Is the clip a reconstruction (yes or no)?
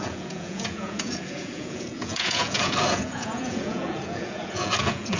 yes